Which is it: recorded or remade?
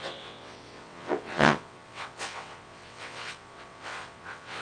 remade